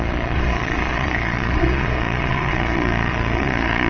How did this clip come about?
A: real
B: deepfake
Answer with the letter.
B